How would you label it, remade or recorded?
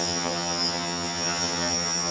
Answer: remade